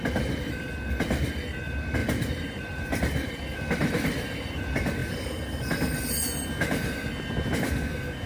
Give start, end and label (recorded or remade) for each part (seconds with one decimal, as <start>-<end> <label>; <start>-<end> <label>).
0.0-2.0 recorded; 2.0-3.3 remade; 3.3-8.3 recorded